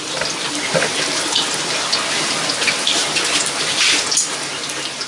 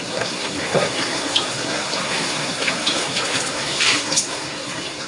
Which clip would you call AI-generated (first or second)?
second